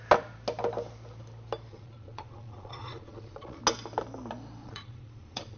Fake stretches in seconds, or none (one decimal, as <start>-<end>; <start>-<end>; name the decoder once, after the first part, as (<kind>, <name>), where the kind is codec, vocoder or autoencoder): 1.7-3.6 (vocoder, Vocos); 4.6-5.6